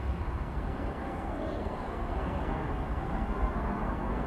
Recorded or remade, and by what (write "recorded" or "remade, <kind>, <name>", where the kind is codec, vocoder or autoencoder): remade, codec, SNAC